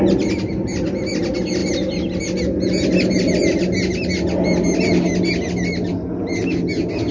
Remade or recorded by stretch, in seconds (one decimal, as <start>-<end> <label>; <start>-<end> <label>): 0.0-7.1 recorded